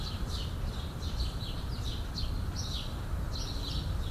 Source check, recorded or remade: recorded